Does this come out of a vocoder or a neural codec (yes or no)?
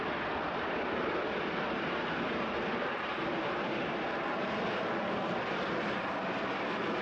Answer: yes